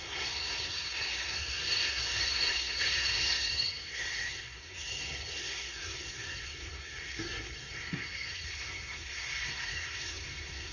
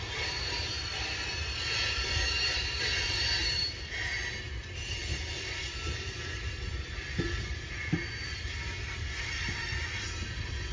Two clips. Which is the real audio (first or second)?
second